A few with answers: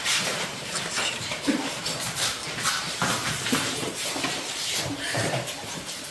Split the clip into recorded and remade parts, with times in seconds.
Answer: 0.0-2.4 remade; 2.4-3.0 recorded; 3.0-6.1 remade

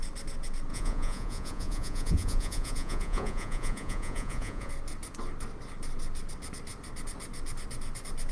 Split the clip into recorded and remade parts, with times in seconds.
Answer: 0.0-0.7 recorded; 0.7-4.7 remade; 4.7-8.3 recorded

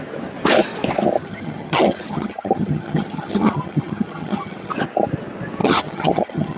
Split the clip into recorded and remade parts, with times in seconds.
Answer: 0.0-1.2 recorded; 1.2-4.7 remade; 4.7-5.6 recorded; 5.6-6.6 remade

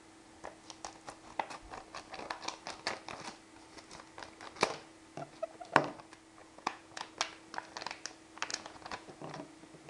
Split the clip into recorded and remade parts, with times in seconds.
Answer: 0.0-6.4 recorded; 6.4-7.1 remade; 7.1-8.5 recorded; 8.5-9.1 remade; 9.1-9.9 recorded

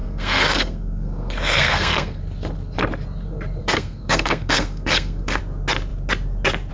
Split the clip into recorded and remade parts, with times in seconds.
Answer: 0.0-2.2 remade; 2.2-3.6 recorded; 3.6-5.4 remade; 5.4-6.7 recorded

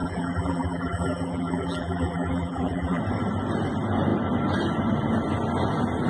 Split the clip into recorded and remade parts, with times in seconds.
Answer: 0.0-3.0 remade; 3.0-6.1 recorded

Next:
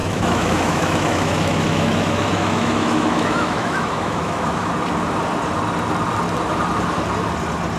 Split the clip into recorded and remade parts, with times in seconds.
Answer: 0.0-4.7 remade; 4.7-7.8 recorded